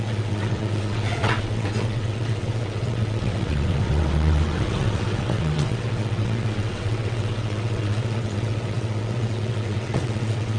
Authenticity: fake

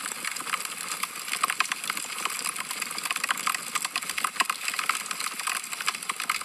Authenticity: real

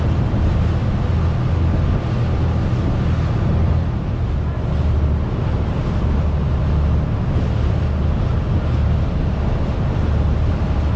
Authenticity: real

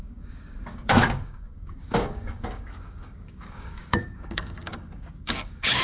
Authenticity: fake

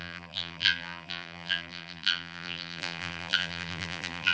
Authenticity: fake